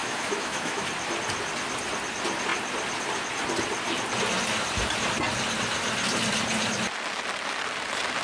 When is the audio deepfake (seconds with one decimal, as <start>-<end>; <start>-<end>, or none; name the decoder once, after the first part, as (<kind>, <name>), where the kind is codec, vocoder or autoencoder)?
0.0-0.9 (autoencoder, DAC-VAE)